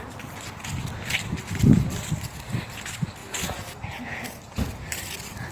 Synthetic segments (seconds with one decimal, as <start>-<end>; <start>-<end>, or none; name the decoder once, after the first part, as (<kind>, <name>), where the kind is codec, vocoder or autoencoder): none